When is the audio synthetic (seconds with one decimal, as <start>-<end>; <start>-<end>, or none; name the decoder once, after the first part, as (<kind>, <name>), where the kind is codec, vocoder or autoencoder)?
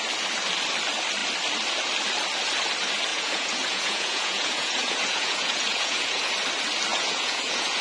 3.1-6.3 (vocoder, Vocos); 6.9-7.8